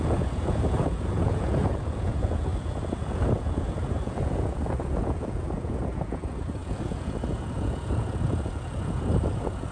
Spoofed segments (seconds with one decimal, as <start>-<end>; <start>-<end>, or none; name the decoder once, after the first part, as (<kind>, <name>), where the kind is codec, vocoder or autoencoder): 0.0-9.7 (vocoder, Vocos)